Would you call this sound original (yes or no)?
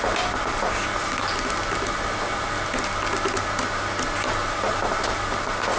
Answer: yes